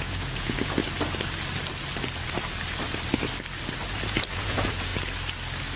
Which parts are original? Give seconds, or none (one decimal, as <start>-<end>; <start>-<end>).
0.8-4.3; 4.9-5.8